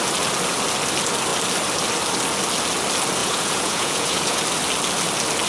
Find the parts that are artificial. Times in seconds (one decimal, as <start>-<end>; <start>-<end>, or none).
3.2-4.4